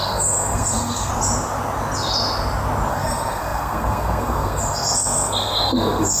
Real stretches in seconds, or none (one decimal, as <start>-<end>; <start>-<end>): 1.1-2.9